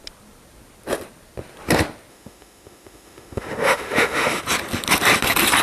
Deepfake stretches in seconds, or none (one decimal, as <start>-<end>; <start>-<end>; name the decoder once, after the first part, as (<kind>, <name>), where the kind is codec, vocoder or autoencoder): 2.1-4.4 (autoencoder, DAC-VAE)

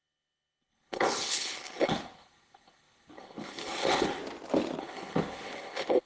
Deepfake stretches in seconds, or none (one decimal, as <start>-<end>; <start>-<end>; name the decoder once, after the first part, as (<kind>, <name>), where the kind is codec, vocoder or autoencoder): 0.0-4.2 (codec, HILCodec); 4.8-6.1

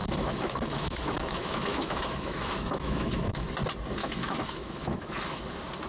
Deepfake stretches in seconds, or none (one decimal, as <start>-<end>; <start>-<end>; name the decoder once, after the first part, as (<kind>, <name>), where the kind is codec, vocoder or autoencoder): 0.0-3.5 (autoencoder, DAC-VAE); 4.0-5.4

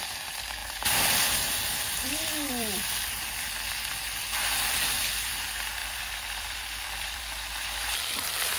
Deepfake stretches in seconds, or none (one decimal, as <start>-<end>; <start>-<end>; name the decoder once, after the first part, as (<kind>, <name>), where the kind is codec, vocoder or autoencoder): 0.6-3.3 (vocoder, BigVGAN v2); 5.8-7.2

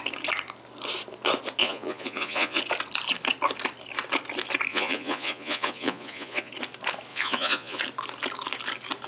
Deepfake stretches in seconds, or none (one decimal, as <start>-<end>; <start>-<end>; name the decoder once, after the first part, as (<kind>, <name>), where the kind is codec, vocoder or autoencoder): 1.6-2.6 (vocoder, Vocos); 4.7-6.5; 7.1-7.8